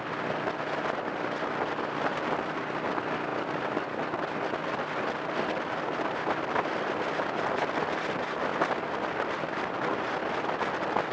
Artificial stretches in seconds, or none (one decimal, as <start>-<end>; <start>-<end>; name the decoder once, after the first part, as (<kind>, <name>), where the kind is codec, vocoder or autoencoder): none